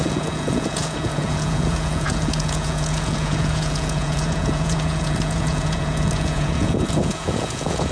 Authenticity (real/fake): fake